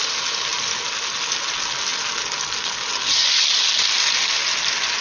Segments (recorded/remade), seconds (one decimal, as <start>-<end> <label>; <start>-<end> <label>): 0.0-5.0 recorded